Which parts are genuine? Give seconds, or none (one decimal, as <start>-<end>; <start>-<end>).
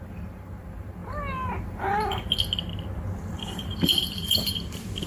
1.0-1.6; 2.2-3.3